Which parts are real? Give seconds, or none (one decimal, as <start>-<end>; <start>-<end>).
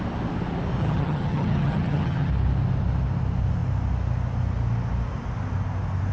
0.0-0.8; 2.3-6.1